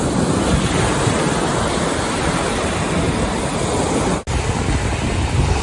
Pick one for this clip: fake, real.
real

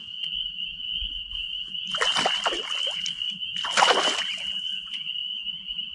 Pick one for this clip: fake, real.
real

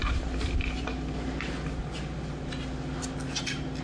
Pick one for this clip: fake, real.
real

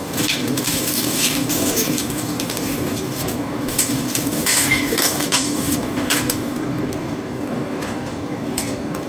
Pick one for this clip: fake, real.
fake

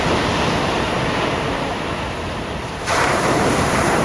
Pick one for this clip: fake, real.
fake